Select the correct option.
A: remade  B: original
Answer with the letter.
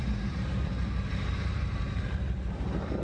A